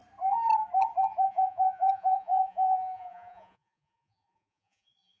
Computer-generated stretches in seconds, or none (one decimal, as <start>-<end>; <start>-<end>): 1.3-5.2